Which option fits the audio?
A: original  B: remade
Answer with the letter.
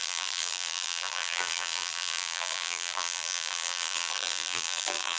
B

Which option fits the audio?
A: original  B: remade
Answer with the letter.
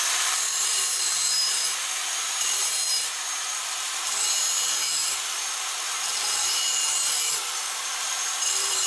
B